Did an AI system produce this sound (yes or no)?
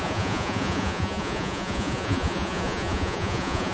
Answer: yes